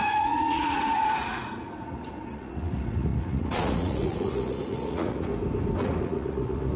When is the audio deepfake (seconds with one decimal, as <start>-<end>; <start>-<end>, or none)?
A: 0.0-5.3; 5.8-6.8